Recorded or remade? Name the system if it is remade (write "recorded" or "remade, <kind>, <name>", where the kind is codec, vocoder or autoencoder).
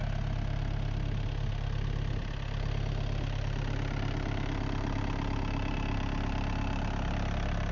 recorded